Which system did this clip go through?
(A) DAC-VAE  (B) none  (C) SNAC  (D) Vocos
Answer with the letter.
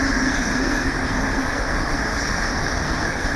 C